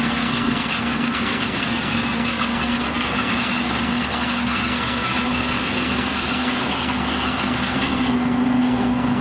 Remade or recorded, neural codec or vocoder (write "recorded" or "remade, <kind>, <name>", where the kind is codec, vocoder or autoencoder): remade, codec, SNAC